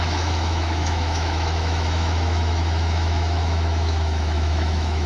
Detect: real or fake fake